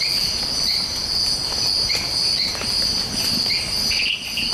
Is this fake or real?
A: real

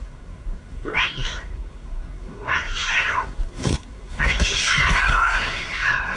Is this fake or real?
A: fake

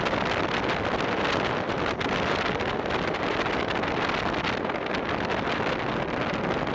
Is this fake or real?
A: real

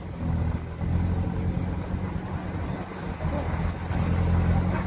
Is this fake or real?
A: real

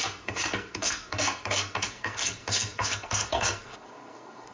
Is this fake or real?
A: fake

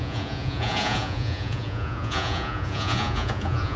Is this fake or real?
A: fake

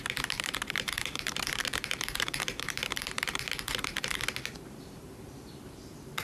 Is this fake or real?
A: fake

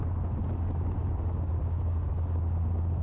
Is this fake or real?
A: real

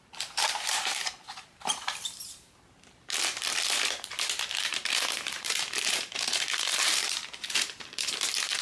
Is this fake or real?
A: fake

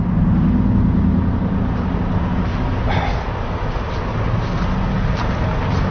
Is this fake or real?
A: real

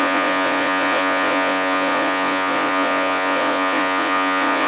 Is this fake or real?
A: fake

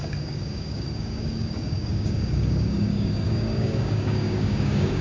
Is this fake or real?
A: fake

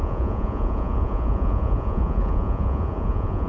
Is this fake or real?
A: fake